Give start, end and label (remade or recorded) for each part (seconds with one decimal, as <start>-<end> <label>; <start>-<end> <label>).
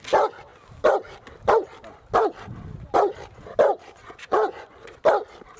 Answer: 0.0-4.0 recorded; 4.0-4.9 remade; 4.9-5.6 recorded